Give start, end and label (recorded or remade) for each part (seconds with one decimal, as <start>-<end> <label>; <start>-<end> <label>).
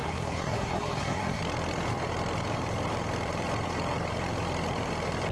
0.0-1.4 remade; 1.4-5.3 recorded